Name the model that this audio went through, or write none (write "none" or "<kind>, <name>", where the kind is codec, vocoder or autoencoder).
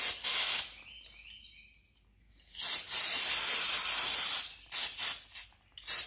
none